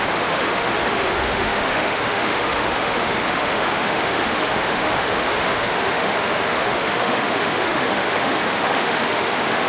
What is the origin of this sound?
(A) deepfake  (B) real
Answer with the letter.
A